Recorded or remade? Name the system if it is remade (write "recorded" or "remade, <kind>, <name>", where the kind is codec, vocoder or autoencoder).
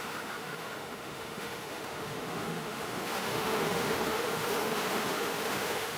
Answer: remade, autoencoder, DAC-VAE